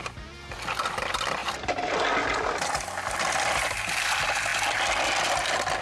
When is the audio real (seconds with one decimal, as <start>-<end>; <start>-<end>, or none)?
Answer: 0.0-5.8